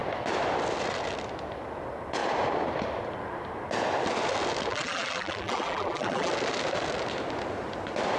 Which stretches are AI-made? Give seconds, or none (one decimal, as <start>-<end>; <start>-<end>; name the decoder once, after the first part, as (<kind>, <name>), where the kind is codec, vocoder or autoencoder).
4.7-6.3 (vocoder, BigVGAN v2)

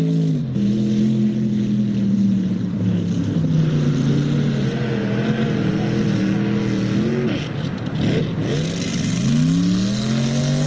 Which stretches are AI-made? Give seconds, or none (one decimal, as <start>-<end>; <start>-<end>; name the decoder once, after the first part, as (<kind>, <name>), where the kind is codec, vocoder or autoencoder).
none

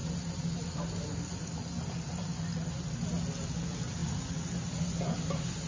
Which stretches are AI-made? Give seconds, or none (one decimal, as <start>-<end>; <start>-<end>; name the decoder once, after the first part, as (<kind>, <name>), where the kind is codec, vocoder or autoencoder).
none

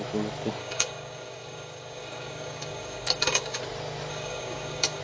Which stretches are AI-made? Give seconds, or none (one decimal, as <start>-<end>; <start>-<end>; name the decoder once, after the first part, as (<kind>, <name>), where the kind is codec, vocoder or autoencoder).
0.6-3.6 (codec, DAC); 4.1-5.0

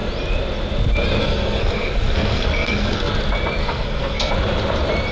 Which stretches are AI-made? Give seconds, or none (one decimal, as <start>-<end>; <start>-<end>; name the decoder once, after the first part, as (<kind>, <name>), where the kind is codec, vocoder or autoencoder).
1.2-3.1 (codec, SNAC); 3.6-4.3

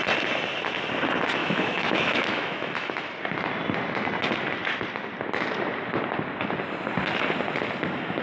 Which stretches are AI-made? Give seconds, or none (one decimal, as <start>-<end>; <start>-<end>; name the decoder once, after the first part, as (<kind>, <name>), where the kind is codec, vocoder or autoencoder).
1.4-2.9 (autoencoder, DAC-VAE)